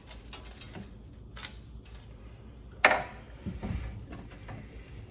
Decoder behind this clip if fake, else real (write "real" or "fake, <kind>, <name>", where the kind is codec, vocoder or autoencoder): real